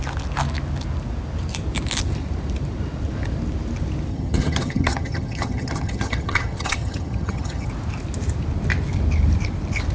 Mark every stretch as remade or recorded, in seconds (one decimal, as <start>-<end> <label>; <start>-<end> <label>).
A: 0.0-4.1 recorded; 4.1-7.7 remade; 7.7-9.9 recorded